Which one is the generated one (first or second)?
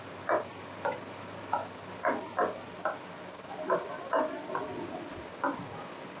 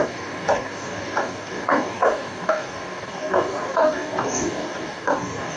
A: second